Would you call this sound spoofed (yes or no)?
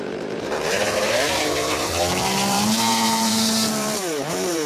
yes